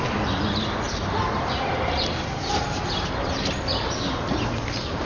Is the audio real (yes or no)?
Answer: no